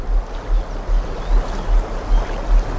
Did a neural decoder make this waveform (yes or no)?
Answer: no